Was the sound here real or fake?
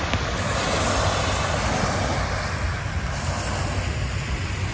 real